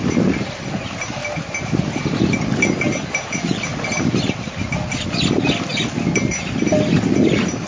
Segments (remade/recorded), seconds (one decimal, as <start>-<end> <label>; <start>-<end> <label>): 0.0-7.7 recorded